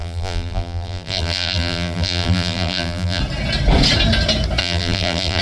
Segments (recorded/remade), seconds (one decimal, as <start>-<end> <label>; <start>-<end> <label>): 0.0-3.2 remade; 3.2-4.6 recorded; 4.6-5.4 remade